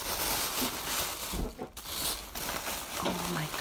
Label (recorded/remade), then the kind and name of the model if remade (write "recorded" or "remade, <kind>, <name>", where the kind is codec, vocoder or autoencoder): recorded